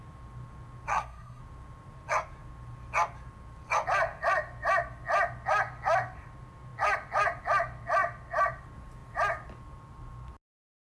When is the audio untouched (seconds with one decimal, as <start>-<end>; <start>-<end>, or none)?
0.0-0.9; 1.4-10.9